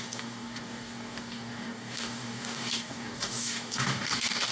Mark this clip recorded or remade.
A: remade